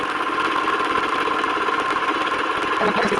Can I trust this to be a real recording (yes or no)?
yes